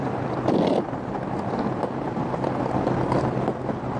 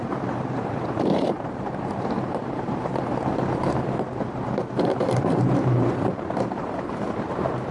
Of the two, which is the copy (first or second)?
second